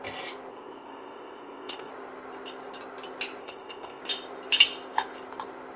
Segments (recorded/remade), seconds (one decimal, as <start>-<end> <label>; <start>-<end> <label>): 0.0-0.5 recorded; 0.5-1.9 remade; 1.9-3.4 recorded; 3.4-4.0 remade; 4.0-5.8 recorded